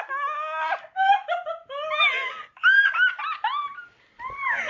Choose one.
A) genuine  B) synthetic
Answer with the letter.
A